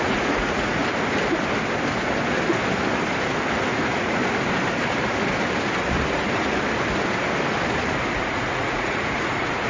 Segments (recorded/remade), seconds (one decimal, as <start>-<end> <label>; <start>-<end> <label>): 0.0-0.8 remade; 0.8-3.7 recorded; 3.7-4.2 remade; 4.2-8.3 recorded; 8.3-9.7 remade